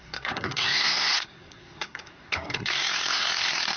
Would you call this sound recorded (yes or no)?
no